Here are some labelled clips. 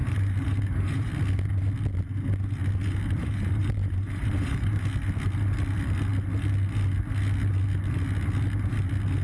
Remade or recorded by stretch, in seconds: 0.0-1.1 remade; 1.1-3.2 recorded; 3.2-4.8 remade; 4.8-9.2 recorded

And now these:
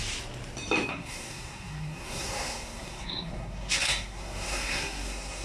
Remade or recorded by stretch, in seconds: 0.0-0.9 recorded; 0.9-5.4 remade

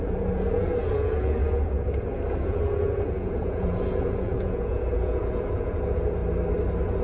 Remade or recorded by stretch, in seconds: 0.0-6.2 remade; 6.2-7.0 recorded

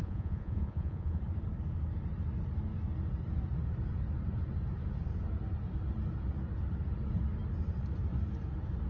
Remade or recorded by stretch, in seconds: 0.0-1.2 remade; 1.2-8.9 recorded

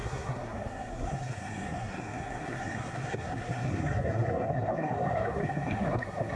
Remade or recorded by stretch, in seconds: 0.0-6.4 remade

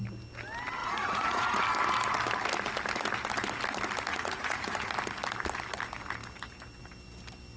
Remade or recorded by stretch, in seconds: 0.0-0.8 recorded; 0.8-1.6 remade; 1.6-4.1 recorded; 4.1-4.9 remade; 4.9-7.6 recorded